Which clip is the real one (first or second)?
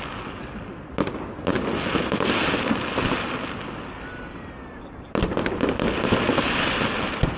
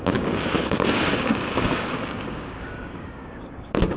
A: first